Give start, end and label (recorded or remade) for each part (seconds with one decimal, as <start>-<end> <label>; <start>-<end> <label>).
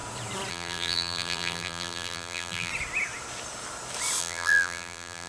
0.0-0.5 recorded; 0.5-2.7 remade; 2.7-4.2 recorded; 4.2-5.3 remade